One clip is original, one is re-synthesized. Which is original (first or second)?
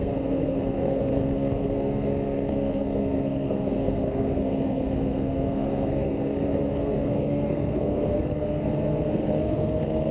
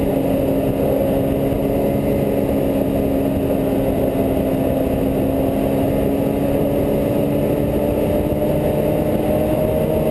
second